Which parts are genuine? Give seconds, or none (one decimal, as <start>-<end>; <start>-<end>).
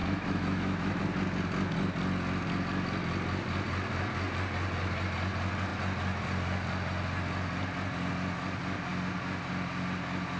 1.0-10.4